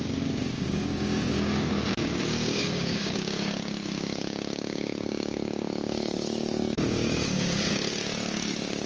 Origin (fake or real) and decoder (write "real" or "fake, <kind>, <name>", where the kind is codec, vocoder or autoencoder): fake, codec, DAC